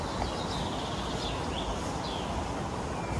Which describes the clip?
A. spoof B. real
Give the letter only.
B